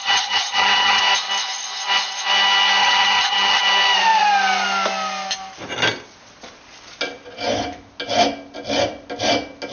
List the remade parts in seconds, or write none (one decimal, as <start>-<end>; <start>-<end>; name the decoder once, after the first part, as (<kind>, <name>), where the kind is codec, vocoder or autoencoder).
0.0-1.0 (vocoder, HiFi-GAN); 2.8-3.6